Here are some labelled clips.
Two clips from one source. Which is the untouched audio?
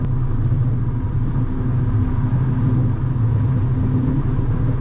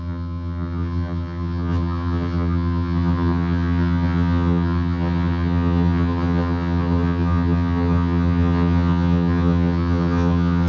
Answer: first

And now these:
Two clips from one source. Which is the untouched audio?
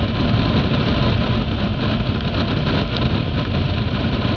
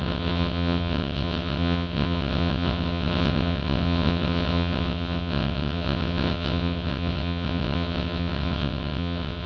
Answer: first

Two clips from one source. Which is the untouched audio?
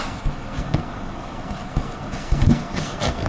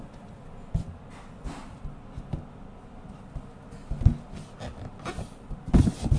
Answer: second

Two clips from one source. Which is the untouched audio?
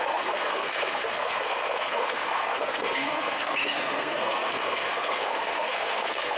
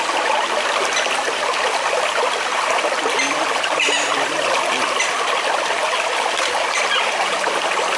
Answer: second